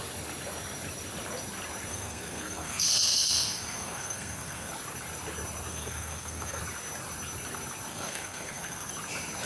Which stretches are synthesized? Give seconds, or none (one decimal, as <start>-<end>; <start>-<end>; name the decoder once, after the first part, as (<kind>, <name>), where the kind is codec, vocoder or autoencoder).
1.9-4.7 (codec, SNAC); 5.7-6.6; 7.9-8.9